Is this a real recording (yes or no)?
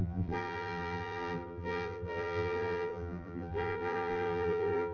no